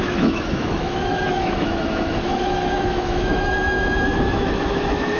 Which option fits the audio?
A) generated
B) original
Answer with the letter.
A